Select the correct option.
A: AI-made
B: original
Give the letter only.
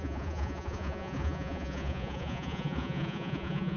A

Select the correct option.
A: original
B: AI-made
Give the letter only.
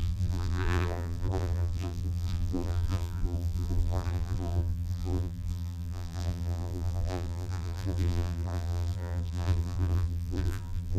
B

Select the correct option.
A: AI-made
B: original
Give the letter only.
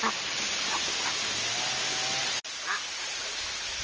B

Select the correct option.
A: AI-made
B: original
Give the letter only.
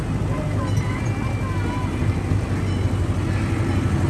B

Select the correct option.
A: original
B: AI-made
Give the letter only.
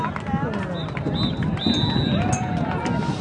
A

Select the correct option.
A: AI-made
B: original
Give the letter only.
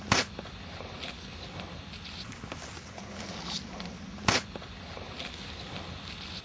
B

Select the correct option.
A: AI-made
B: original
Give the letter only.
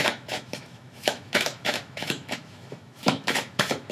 A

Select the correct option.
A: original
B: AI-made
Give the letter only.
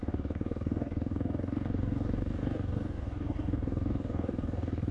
B